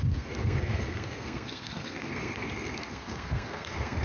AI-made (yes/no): yes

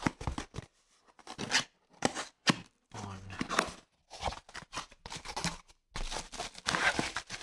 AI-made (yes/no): no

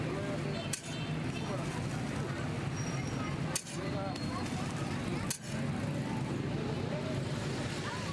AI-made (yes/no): no